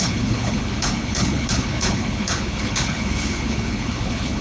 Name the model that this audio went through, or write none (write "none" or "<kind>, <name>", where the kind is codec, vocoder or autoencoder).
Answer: codec, HILCodec